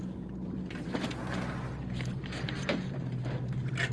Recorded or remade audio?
recorded